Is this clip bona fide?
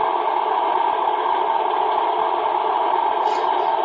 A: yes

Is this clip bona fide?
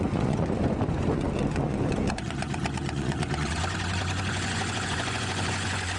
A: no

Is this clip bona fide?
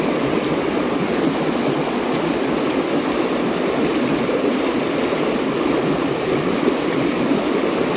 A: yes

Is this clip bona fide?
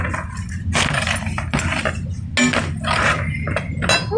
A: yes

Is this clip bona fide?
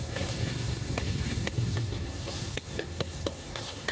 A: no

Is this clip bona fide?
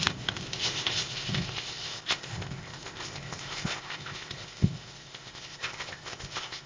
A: no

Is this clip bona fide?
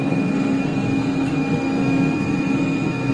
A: no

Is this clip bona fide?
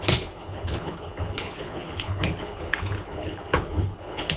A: no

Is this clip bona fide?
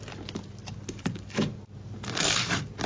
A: yes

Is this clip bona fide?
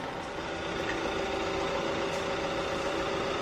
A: yes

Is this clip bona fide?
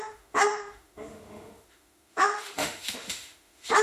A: no